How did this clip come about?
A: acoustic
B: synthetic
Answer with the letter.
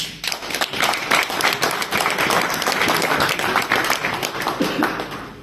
A